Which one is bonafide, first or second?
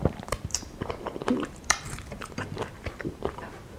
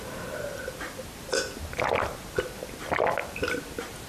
second